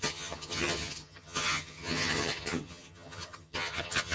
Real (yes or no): no